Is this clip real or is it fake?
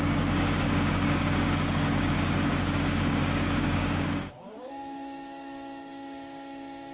fake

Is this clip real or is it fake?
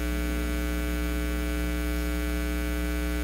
real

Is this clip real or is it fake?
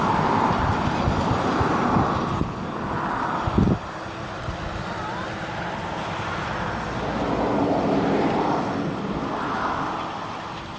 real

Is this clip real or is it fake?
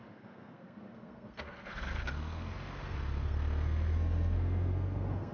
fake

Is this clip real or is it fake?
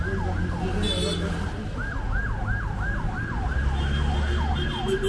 real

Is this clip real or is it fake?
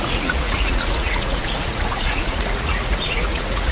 fake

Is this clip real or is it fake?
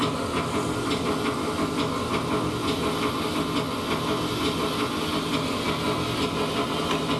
real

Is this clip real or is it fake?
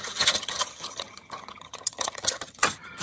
fake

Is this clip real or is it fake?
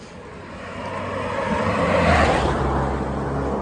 real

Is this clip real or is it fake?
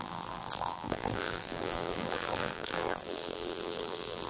fake